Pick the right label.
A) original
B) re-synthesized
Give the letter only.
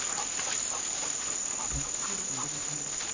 A